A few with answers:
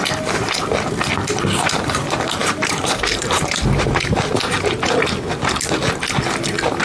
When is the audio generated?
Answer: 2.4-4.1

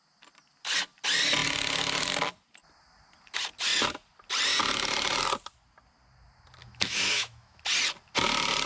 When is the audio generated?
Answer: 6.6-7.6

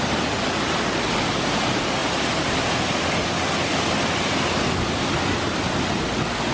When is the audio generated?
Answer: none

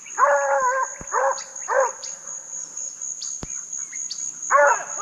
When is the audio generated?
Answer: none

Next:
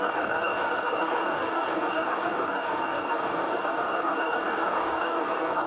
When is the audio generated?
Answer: 0.0-5.7

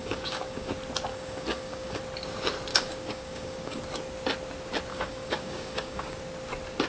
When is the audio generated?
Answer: 0.0-0.7; 1.1-2.0; 2.7-3.8; 4.9-6.2